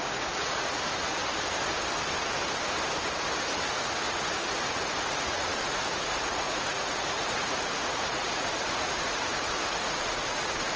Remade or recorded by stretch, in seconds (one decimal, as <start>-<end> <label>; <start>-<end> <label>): 0.0-1.2 remade; 1.2-3.7 recorded; 3.7-10.8 remade